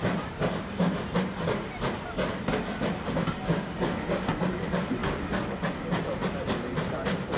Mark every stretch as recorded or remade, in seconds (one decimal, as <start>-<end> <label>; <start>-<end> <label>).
0.0-0.4 remade; 0.4-4.3 recorded; 4.3-5.0 remade; 5.0-5.7 recorded; 5.7-6.2 remade; 6.2-6.8 recorded; 6.8-7.4 remade

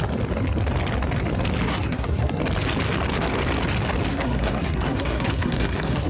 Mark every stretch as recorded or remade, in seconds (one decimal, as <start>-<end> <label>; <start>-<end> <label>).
0.0-1.7 recorded; 1.7-2.4 remade; 2.4-4.1 recorded; 4.1-6.1 remade

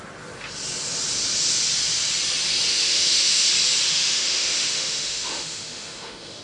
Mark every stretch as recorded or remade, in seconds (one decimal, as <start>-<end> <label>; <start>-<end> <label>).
0.0-2.7 recorded; 2.7-3.5 remade; 3.5-3.9 recorded; 3.9-6.4 remade

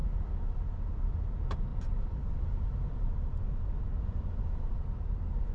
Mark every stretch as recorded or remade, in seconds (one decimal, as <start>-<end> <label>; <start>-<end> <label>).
0.0-1.7 recorded; 1.7-4.8 remade; 4.8-5.5 recorded

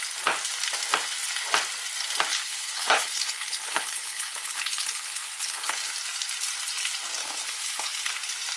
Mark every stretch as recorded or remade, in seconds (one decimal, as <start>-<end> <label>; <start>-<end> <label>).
0.0-2.3 recorded; 2.3-5.9 remade; 5.9-7.2 recorded; 7.2-8.1 remade; 8.1-8.6 recorded